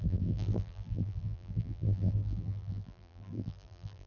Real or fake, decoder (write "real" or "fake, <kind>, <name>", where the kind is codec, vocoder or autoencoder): fake, vocoder, BigVGAN v2